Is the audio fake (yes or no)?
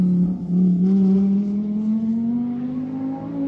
no